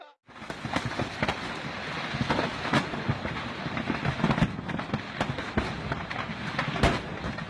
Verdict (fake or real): real